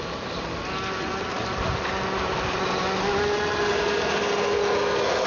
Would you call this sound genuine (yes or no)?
yes